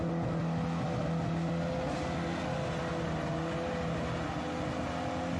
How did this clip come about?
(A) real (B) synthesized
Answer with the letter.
A